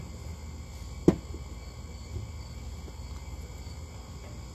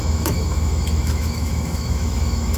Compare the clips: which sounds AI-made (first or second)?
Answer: second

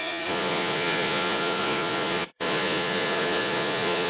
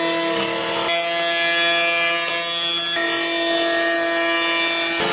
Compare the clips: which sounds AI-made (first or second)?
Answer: first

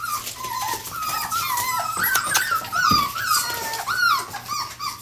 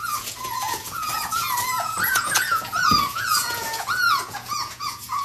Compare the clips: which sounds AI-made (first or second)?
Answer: second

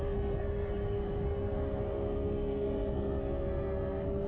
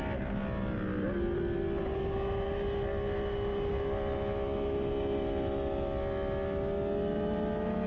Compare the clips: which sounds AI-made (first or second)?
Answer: first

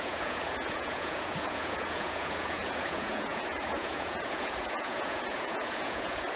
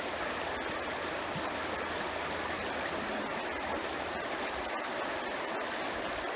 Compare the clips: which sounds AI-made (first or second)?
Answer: first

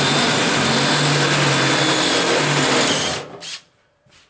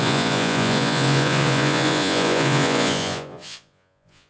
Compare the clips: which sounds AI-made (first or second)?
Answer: second